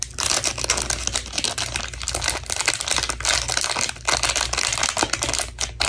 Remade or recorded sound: recorded